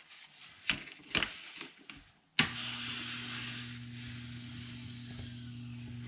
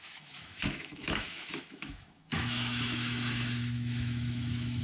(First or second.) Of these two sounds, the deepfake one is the second